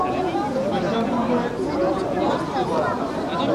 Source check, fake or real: real